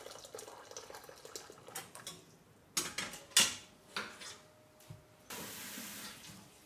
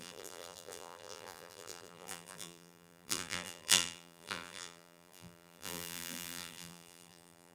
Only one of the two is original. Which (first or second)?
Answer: first